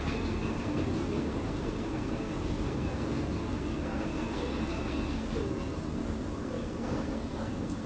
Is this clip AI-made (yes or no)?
yes